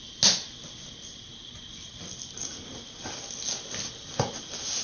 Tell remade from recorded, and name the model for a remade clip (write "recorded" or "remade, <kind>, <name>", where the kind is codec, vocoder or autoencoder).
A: recorded